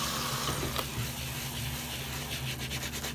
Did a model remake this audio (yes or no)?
no